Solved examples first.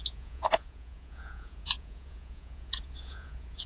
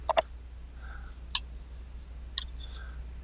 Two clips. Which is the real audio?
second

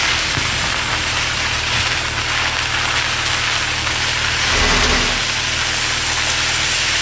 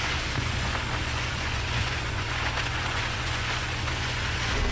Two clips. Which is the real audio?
first